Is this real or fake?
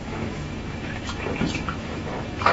fake